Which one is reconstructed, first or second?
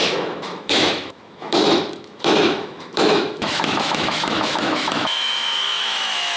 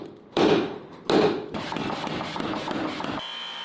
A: first